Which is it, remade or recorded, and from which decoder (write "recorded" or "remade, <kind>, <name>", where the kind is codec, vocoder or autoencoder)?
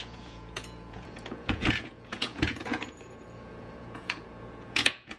remade, vocoder, Vocos